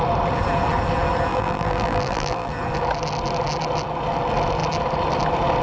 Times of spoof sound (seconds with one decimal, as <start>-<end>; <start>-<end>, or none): 1.3-2.5